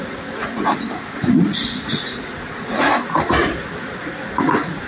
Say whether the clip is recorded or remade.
remade